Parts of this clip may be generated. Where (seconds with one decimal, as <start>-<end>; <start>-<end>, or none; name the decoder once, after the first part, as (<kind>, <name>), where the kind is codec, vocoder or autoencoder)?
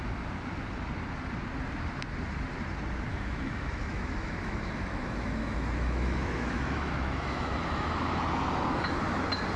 3.1-8.2 (autoencoder, DAC-VAE)